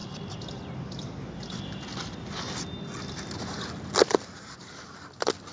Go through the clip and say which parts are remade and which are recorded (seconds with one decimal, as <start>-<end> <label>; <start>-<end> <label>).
0.0-5.5 recorded